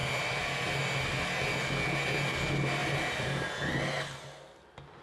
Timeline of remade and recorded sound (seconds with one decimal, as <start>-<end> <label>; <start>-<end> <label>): 0.0-5.0 recorded